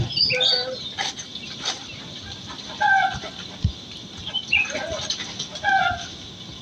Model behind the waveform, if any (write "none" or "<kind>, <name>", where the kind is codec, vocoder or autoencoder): none